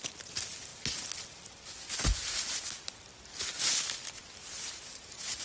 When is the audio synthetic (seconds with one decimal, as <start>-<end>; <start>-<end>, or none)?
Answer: none